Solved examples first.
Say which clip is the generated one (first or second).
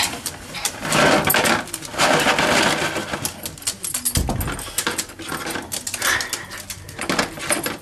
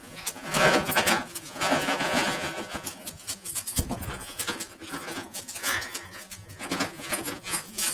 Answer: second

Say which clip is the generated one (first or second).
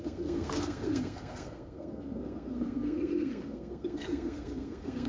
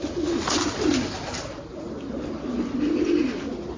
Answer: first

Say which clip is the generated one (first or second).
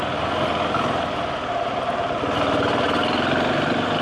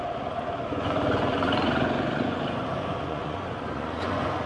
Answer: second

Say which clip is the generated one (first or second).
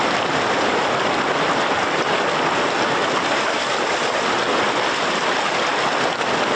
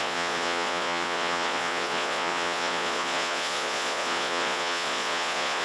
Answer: second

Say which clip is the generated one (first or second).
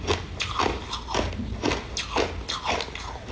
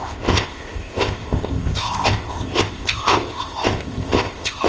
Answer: second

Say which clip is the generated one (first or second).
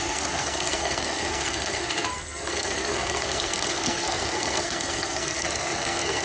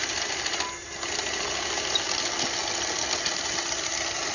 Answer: first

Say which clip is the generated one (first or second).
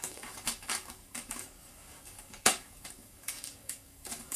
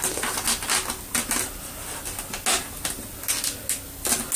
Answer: first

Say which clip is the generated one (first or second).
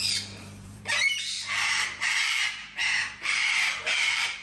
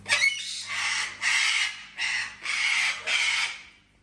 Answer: first